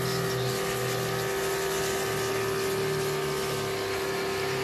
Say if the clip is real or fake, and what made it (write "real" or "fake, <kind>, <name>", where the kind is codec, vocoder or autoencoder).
real